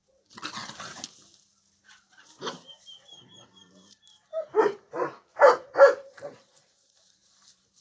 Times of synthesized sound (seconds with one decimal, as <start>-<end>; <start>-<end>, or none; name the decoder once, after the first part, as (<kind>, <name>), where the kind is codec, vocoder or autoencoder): 1.8-7.8 (vocoder, BigVGAN v2)

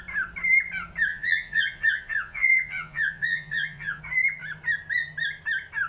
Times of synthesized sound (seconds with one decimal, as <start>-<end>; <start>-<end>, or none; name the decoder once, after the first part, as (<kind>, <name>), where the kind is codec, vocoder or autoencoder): 1.1-4.0 (vocoder, Vocos)

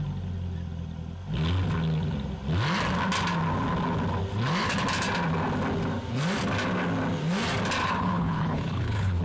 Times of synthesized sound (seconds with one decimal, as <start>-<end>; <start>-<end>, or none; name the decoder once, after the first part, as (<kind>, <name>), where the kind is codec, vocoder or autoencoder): 7.8-9.2 (codec, HILCodec)